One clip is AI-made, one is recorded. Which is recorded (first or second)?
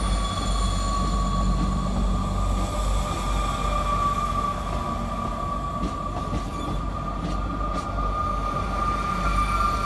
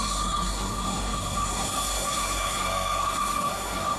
first